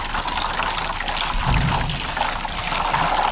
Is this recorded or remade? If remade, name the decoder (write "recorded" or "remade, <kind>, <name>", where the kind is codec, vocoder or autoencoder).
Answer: recorded